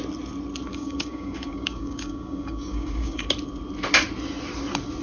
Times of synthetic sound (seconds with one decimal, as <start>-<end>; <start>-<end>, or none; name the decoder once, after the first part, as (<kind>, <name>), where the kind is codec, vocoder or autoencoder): 0.7-3.3 (codec, DAC)